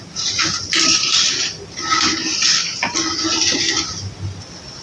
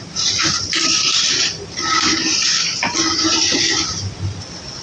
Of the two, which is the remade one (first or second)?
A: second